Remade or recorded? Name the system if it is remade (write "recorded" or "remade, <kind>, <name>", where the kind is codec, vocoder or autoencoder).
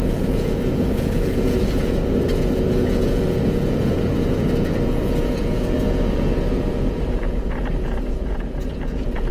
remade, vocoder, Vocos